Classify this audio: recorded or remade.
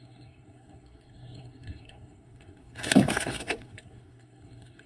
remade